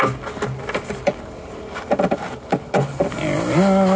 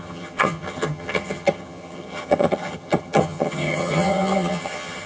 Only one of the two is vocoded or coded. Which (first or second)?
second